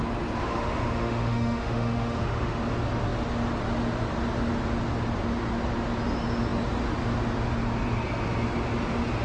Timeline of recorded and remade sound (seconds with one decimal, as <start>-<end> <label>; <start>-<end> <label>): 0.0-0.4 recorded; 0.4-2.6 remade; 2.6-9.2 recorded

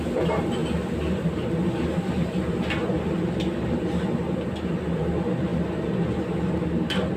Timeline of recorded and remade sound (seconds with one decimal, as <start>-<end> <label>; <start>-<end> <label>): 0.0-7.2 recorded

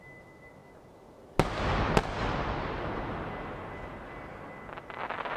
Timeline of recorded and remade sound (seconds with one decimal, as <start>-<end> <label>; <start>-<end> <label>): 0.0-5.4 recorded

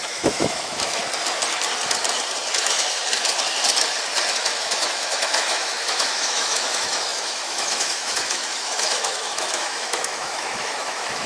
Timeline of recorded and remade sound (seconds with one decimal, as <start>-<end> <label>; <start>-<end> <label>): 0.0-1.0 remade; 1.0-2.6 recorded; 2.6-3.0 remade; 3.0-4.3 recorded; 4.3-11.3 remade

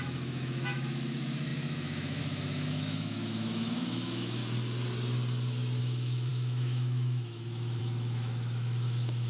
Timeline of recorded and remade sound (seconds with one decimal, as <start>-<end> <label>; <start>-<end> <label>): 0.0-4.4 remade; 4.4-5.8 recorded; 5.8-9.3 remade

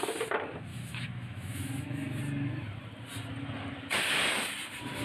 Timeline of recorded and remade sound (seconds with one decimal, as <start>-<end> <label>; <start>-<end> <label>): 0.0-0.7 recorded; 0.7-2.2 remade; 2.2-5.0 recorded

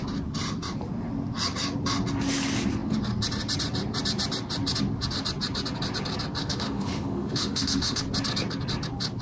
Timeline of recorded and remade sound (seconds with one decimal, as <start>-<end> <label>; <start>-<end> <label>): 0.0-6.4 recorded; 6.4-8.0 remade; 8.0-9.2 recorded

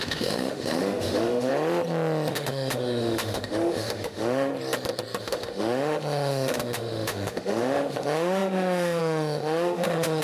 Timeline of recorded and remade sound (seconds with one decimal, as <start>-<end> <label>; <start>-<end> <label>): 0.0-1.5 remade; 1.5-2.3 recorded; 2.3-4.5 remade; 4.5-5.2 recorded; 5.2-10.2 remade